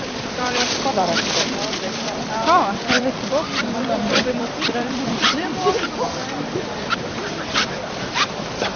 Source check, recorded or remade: remade